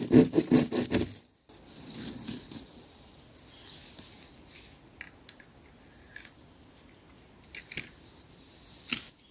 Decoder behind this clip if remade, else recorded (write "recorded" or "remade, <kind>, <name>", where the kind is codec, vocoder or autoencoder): recorded